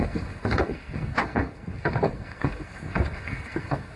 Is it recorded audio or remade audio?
remade